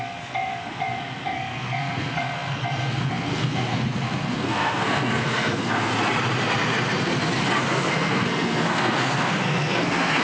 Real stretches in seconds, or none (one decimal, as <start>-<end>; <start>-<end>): 5.9-7.6